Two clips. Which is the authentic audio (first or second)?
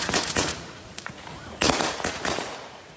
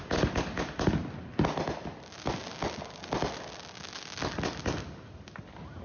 second